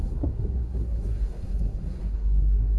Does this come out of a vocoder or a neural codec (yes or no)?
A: yes